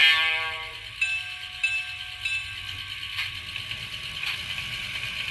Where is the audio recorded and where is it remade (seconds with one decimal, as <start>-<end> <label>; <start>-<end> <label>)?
0.0-0.7 remade; 0.7-5.3 recorded